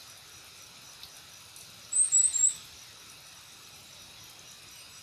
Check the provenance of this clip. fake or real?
real